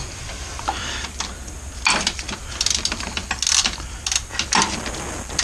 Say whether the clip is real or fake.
real